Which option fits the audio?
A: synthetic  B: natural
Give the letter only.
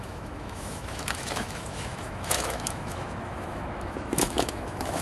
A